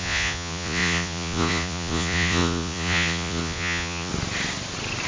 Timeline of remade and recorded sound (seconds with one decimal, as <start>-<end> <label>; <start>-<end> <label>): 0.0-4.1 remade; 4.1-5.1 recorded